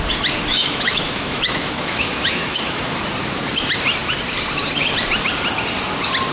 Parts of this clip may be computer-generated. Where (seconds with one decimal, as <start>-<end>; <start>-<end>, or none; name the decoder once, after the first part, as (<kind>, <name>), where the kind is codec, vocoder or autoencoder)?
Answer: 0.5-2.9 (autoencoder, DAC-VAE)